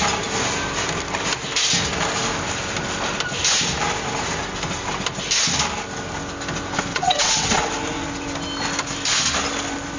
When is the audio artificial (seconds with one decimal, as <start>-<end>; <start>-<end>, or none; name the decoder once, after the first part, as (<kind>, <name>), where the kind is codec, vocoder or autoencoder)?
6.9-7.7 (vocoder, WaveNeXt)